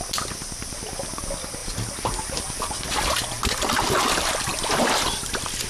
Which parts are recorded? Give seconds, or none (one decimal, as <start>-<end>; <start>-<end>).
0.0-5.7